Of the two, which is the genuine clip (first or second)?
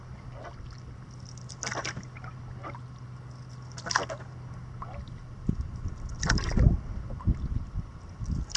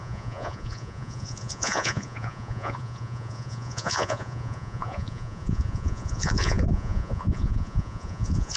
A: first